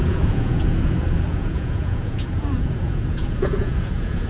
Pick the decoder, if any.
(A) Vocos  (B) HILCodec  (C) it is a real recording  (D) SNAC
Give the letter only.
A